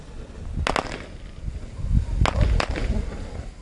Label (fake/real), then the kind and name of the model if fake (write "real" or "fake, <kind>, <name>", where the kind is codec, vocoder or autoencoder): real